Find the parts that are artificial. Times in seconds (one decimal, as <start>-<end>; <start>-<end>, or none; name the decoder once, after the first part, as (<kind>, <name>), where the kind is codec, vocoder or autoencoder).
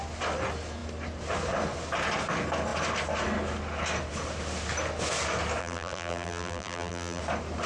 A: 5.6-7.2 (vocoder, BigVGAN v2)